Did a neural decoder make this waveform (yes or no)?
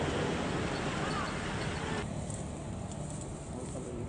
yes